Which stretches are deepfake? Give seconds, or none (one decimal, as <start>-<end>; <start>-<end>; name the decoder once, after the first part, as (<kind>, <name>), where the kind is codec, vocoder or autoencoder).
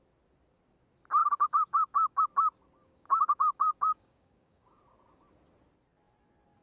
1.2-2.2 (codec, DAC); 2.8-4.8